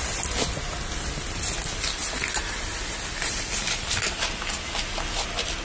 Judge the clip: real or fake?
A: real